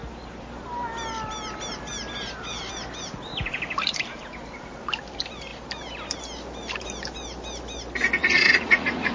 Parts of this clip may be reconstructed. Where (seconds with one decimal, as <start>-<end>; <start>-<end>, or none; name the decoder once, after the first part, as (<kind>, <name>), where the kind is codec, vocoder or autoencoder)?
8.2-9.1 (vocoder, Vocos)